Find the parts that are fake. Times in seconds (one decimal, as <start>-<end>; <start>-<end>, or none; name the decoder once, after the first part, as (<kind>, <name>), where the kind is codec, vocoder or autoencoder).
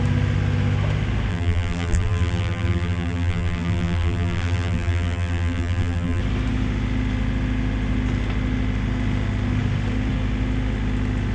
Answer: 1.3-6.2 (vocoder, BigVGAN v2)